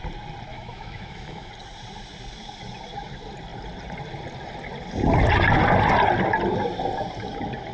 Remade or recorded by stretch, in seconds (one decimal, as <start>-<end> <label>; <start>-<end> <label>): 0.0-0.5 recorded; 0.5-1.5 remade; 1.5-7.7 recorded